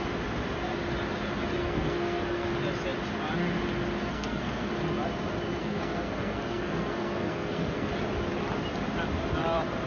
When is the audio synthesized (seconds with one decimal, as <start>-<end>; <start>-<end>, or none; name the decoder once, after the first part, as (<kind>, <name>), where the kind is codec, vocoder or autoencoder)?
1.6-2.5 (codec, SNAC); 4.1-4.7; 5.6-7.9